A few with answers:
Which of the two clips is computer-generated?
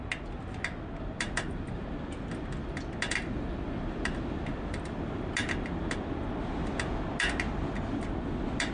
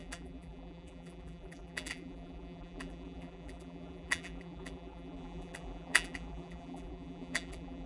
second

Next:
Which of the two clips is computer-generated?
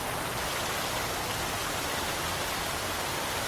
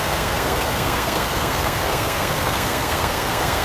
second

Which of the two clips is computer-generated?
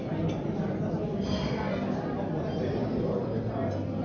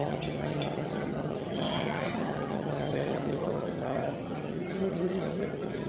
second